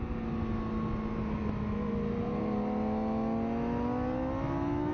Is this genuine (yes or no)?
yes